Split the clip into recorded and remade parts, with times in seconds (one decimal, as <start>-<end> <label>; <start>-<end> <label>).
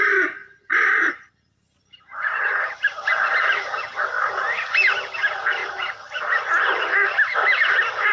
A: 0.0-8.1 recorded